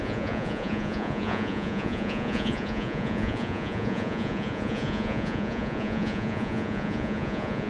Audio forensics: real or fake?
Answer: fake